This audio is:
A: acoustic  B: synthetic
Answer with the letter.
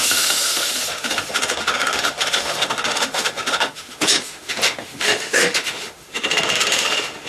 B